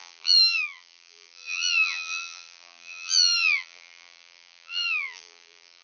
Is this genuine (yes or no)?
no